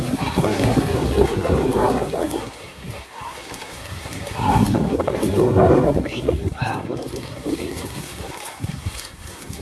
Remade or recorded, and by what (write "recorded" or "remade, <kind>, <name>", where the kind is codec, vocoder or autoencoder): remade, codec, SNAC